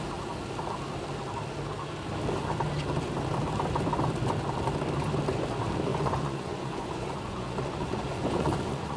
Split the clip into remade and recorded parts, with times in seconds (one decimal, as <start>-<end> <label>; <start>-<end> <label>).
0.0-5.9 recorded; 5.9-9.0 remade